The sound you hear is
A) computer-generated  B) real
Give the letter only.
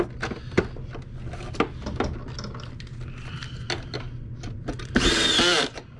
B